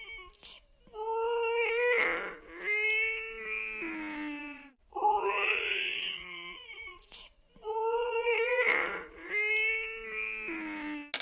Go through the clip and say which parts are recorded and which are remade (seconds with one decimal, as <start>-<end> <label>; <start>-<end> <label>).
0.0-4.4 recorded; 4.4-9.3 remade; 9.3-11.2 recorded